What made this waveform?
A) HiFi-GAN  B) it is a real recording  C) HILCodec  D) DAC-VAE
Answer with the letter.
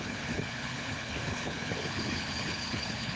C